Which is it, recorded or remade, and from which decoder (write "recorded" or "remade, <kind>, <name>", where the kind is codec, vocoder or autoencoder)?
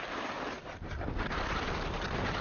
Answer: recorded